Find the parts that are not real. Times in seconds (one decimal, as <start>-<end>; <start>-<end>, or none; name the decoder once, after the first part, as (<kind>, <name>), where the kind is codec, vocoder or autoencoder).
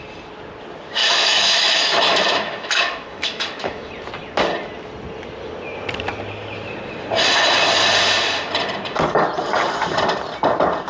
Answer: 1.0-3.9 (autoencoder, DAC-VAE)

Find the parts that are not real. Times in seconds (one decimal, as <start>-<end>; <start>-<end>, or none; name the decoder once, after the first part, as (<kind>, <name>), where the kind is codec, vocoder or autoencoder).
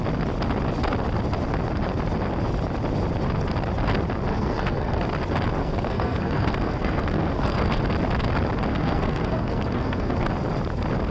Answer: 4.3-5.0 (codec, SNAC); 5.6-7.8; 8.7-10.3